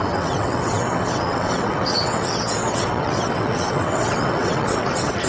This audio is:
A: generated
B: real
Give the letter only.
A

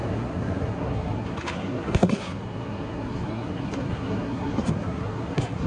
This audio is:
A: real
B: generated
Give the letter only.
B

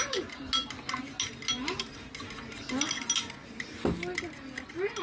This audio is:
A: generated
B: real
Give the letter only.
B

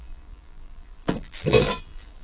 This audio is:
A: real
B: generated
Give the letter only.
B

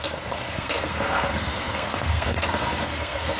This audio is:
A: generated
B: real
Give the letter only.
A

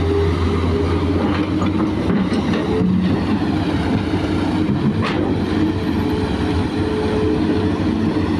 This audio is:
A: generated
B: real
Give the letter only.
B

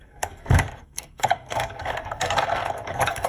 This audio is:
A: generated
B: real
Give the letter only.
A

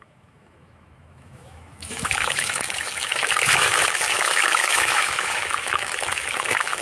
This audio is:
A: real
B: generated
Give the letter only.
B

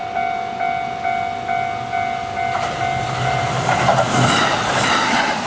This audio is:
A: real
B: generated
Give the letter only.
A